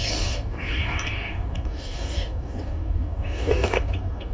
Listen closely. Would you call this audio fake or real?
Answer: fake